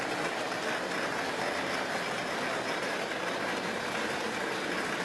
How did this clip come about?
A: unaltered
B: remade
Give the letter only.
B